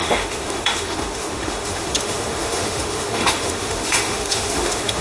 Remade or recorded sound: remade